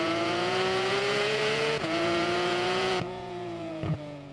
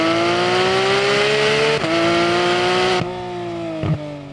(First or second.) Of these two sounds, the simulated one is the first